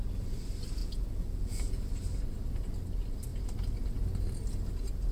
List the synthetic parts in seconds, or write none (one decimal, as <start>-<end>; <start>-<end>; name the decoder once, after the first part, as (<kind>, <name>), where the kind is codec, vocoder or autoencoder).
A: 0.8-1.8 (vocoder, Vocos)